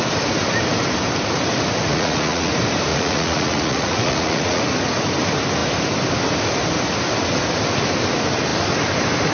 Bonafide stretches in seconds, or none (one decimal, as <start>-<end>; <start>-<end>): 0.0-1.9; 2.5-2.9; 4.6-9.3